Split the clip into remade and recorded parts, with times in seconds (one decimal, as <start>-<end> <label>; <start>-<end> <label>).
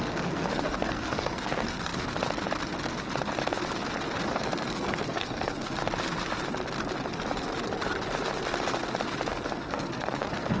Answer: 0.0-1.9 remade; 1.9-4.3 recorded; 4.3-5.8 remade; 5.8-9.3 recorded; 9.3-10.6 remade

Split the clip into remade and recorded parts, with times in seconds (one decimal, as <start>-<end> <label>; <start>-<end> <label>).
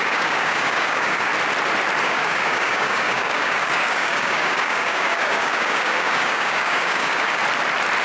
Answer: 0.0-1.3 remade; 1.3-2.0 recorded; 2.0-7.4 remade; 7.4-8.0 recorded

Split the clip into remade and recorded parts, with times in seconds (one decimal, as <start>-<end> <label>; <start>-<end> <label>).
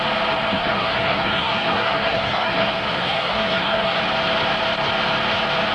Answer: 0.0-0.6 recorded; 0.6-4.0 remade; 4.0-5.7 recorded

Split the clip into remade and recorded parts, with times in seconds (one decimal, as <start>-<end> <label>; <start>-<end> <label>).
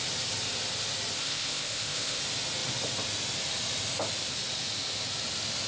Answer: 0.0-1.2 recorded; 1.2-2.2 remade; 2.2-5.7 recorded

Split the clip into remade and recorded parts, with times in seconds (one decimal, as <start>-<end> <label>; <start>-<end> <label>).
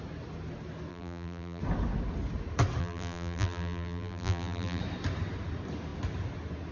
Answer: 0.0-0.9 recorded; 0.9-1.6 remade; 1.6-2.8 recorded; 2.8-4.8 remade; 4.8-6.7 recorded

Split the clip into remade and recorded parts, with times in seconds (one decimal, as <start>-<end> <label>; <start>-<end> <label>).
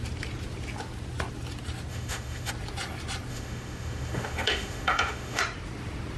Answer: 0.0-1.9 recorded; 1.9-2.5 remade; 2.5-3.3 recorded; 3.3-5.4 remade; 5.4-6.2 recorded